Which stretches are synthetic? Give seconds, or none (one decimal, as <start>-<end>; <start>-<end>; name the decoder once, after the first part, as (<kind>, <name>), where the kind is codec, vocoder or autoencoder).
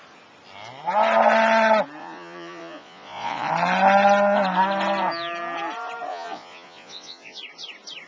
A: 2.0-3.5 (vocoder, Vocos); 6.1-7.4